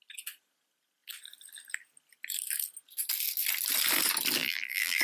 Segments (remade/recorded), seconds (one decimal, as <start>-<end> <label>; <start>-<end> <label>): 0.0-4.4 recorded; 4.4-5.0 remade